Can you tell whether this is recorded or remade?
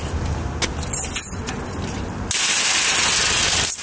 recorded